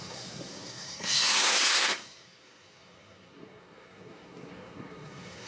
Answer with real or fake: fake